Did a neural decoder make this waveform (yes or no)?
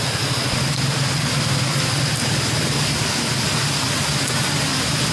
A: no